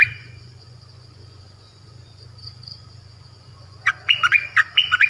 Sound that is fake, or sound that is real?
fake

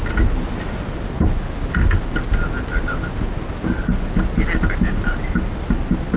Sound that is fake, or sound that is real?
real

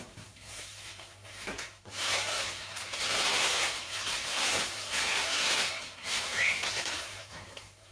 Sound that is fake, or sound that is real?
fake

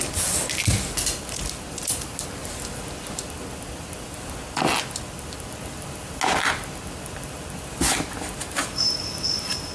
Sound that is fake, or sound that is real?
real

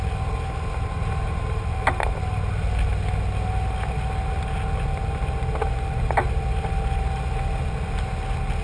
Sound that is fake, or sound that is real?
real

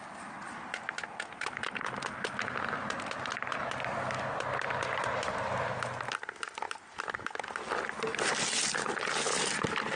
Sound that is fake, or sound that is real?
real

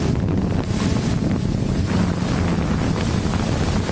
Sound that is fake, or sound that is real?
real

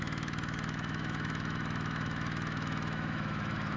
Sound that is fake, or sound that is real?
fake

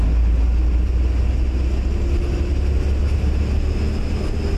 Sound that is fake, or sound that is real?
real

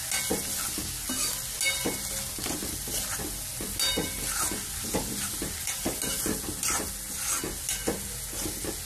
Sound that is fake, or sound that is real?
real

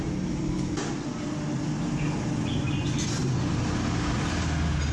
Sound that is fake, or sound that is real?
real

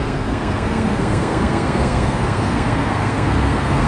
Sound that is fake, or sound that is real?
fake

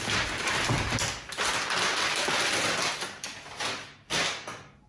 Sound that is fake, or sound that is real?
real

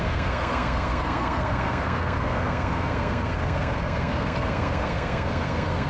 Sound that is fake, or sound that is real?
fake